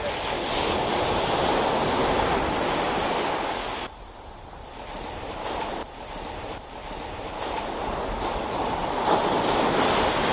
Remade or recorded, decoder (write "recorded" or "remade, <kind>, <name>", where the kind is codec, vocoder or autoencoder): recorded